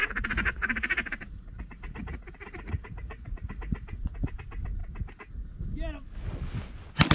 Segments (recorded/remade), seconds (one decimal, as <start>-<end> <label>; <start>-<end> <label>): 0.0-4.3 remade; 4.3-7.1 recorded